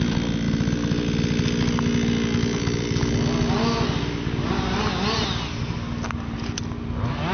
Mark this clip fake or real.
real